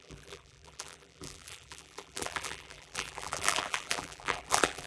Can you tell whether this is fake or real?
fake